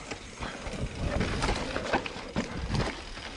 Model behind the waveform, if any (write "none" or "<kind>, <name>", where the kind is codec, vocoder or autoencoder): none